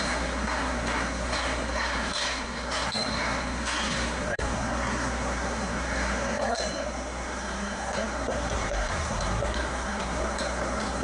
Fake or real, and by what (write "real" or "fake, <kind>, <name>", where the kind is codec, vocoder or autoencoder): fake, codec, SNAC